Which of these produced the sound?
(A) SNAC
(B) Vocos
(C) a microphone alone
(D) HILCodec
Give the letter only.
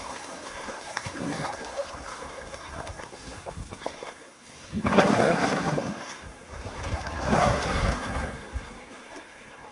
A